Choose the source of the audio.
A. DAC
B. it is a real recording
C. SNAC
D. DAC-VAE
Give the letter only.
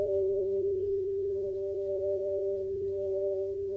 C